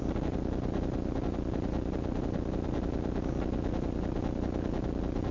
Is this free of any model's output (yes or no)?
yes